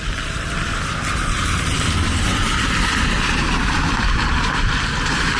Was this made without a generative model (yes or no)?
no